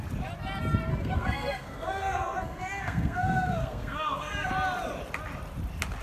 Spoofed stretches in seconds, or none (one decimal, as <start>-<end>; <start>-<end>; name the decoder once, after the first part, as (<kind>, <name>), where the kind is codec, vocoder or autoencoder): 0.9-4.5 (codec, SNAC)